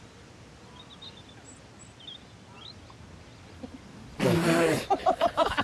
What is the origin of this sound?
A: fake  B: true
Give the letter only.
B